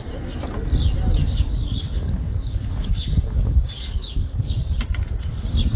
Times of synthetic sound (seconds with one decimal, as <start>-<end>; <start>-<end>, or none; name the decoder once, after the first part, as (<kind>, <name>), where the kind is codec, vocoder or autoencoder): 1.2-4.7 (codec, DAC)